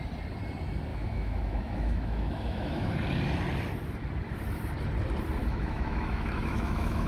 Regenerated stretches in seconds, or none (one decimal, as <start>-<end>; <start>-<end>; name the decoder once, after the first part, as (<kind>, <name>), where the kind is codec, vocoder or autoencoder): 0.9-2.9 (autoencoder, DAC-VAE); 5.4-7.1